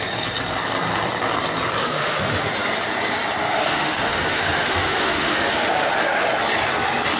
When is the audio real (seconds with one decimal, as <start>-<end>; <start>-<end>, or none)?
0.0-1.8; 2.5-3.6; 6.3-7.2